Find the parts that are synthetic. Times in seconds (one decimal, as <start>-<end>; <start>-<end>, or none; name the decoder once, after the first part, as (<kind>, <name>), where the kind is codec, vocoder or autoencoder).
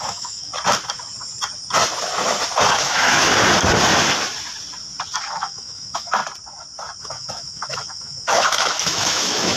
0.0-0.5 (autoencoder, DAC-VAE); 2.7-3.3; 5.2-6.2; 7.0-9.6